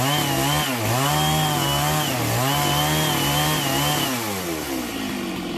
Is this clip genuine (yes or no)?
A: yes